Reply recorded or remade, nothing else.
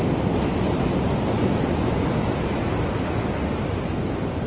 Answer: recorded